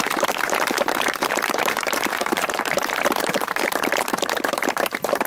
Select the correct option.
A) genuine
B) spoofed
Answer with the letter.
B